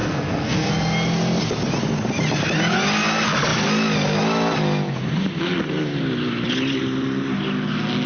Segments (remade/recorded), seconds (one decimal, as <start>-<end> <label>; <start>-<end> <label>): 0.0-0.7 remade; 0.7-8.1 recorded